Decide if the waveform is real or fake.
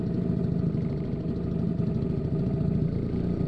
real